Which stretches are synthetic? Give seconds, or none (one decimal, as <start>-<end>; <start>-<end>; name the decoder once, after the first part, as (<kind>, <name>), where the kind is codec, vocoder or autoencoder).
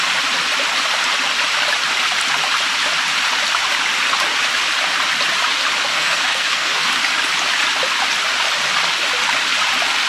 5.9-6.9 (codec, SNAC)